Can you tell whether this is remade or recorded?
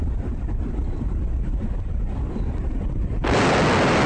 recorded